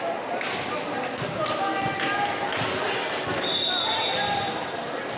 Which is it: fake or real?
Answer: real